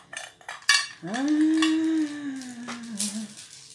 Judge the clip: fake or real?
real